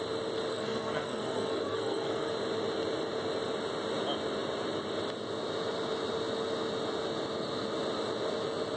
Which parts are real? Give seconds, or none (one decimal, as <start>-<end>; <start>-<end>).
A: 0.0-0.5; 2.3-8.8